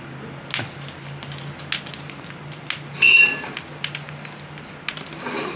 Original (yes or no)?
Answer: yes